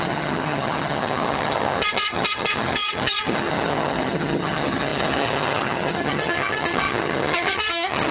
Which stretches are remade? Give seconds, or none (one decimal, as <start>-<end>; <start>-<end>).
0.0-8.1